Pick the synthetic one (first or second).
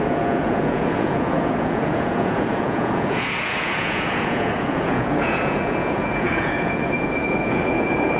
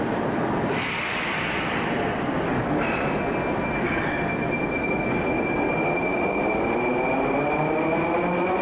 first